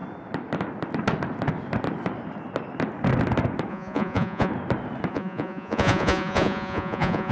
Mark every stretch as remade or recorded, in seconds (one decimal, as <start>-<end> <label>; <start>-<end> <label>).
0.0-3.7 recorded; 3.7-4.5 remade; 4.5-5.1 recorded; 5.1-7.3 remade